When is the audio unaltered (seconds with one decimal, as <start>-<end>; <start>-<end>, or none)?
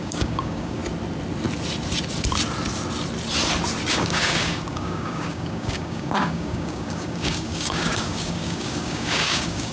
0.8-3.9